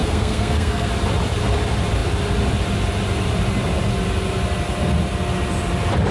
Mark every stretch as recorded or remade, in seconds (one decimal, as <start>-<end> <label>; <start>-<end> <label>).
0.0-0.9 remade; 0.9-6.1 recorded

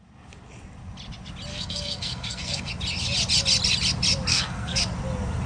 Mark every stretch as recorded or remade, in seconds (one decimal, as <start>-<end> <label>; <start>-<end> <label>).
0.0-1.5 recorded; 1.5-2.7 remade; 2.7-4.3 recorded; 4.3-4.8 remade; 4.8-5.5 recorded

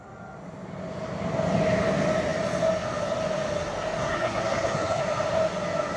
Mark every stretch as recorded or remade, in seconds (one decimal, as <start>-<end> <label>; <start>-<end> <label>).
0.0-4.0 recorded; 4.0-5.0 remade; 5.0-6.0 recorded

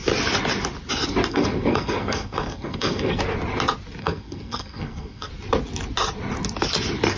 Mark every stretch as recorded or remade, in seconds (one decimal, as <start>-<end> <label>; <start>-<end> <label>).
0.0-1.3 recorded; 1.3-3.2 remade; 3.2-4.0 recorded; 4.0-5.3 remade; 5.3-7.2 recorded

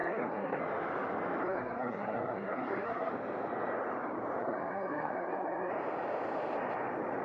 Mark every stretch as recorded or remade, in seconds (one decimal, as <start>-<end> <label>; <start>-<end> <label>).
0.0-0.6 remade; 0.6-1.4 recorded; 1.4-3.1 remade; 3.1-4.4 recorded; 4.4-5.7 remade; 5.7-7.2 recorded

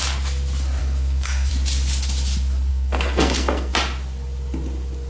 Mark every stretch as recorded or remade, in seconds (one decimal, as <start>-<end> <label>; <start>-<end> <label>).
0.0-0.8 recorded; 0.8-1.5 remade; 1.5-2.7 recorded; 2.7-3.7 remade; 3.7-5.1 recorded

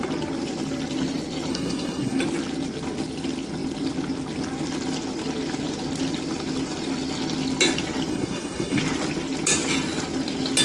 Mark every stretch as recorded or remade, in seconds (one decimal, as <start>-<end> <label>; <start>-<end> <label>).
0.0-1.5 recorded; 1.5-2.2 remade; 2.2-8.1 recorded; 8.1-8.8 remade; 8.8-10.6 recorded